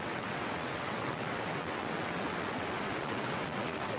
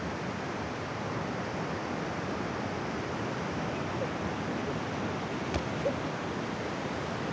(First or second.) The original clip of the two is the second